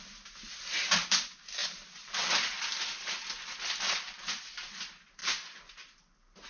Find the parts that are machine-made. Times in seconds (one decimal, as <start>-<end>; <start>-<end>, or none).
none